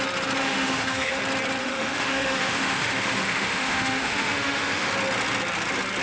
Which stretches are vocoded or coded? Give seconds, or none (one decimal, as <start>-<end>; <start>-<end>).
0.4-1.2; 1.6-4.9